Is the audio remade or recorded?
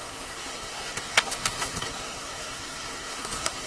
remade